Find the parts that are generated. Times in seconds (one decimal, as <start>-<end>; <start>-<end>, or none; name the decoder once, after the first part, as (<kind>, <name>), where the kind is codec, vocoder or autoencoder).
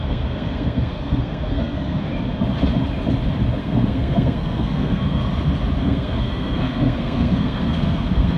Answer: 0.0-2.1 (codec, SNAC); 3.6-5.2; 5.8-8.4